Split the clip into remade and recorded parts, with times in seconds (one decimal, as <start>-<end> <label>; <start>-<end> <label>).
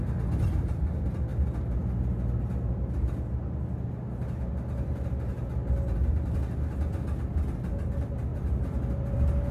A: 0.0-8.3 recorded; 8.3-9.5 remade